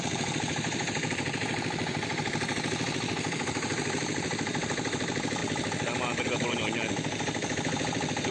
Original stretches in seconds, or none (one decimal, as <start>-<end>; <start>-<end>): 5.4-6.5